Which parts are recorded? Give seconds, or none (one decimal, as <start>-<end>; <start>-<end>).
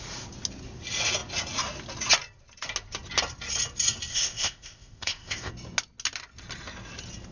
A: 0.0-4.1; 5.5-7.3